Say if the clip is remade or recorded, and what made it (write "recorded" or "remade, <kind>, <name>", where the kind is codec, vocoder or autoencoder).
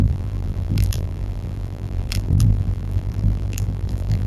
remade, vocoder, BigVGAN v2